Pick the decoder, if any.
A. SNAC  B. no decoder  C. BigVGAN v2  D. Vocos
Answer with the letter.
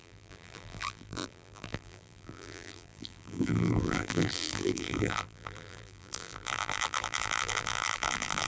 C